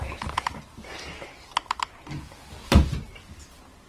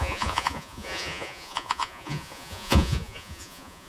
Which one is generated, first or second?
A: second